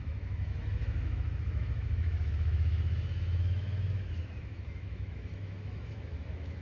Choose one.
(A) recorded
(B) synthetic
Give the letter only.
B